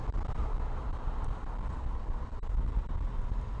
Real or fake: real